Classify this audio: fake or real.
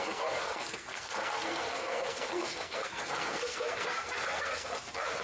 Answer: fake